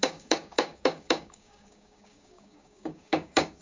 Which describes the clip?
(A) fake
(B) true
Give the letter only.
A